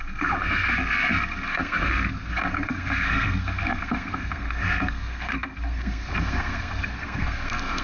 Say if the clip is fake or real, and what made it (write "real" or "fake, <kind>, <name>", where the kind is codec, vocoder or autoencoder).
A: fake, codec, SNAC